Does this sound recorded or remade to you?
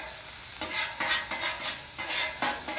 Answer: recorded